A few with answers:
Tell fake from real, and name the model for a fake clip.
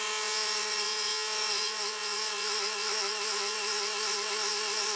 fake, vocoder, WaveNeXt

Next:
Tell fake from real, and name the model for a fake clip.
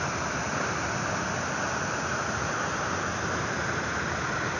real